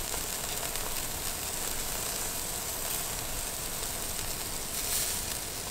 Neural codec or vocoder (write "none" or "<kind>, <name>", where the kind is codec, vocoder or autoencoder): none